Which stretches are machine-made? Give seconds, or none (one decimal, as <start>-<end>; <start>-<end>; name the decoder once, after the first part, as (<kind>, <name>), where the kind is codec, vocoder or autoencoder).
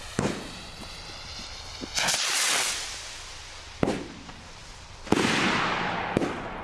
none